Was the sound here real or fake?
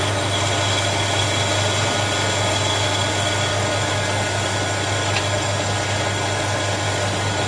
real